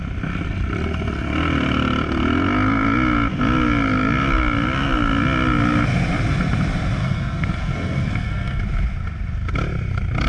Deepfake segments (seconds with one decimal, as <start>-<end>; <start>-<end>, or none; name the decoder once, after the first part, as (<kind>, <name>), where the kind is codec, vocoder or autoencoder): 7.0-8.6 (codec, SNAC)